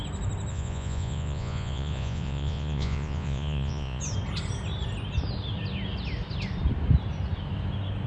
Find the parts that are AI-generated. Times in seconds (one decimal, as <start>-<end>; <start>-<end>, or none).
0.5-4.0